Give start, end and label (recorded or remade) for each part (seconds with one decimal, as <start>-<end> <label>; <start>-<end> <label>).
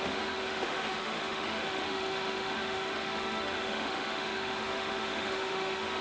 0.0-6.0 remade